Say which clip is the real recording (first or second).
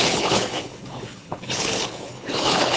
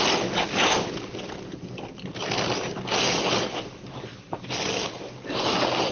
second